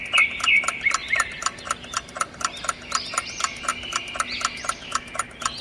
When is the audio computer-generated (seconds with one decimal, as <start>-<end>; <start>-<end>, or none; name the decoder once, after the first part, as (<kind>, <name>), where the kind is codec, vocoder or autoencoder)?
1.0-3.0 (vocoder, BigVGAN v2); 3.7-4.3